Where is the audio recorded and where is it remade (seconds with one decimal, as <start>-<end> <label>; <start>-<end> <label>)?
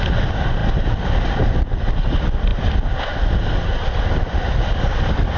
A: 0.0-0.6 remade; 0.6-1.6 recorded; 1.6-2.5 remade; 2.5-4.9 recorded; 4.9-5.4 remade